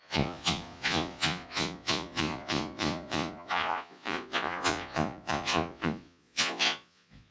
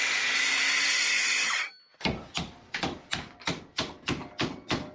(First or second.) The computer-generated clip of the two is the first